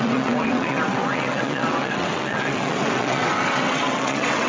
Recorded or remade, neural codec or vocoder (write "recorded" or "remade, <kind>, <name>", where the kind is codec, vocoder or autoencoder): remade, vocoder, WaveNeXt